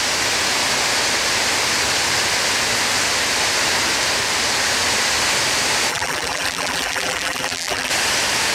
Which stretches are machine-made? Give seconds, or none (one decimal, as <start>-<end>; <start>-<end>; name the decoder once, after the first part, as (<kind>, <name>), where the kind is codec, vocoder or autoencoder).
5.9-7.9 (vocoder, BigVGAN v2)